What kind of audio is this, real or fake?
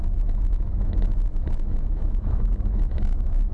fake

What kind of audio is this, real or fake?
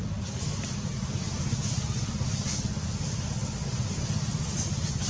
real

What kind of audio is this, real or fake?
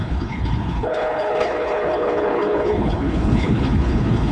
fake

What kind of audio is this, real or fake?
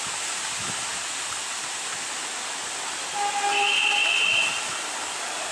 real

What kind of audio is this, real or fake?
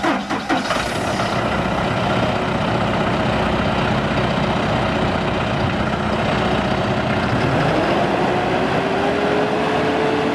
real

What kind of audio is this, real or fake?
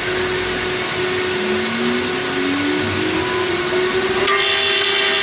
real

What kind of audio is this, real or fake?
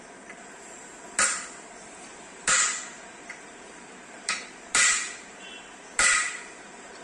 fake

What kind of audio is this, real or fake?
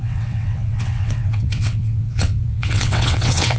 fake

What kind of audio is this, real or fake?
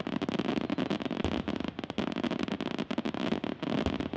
real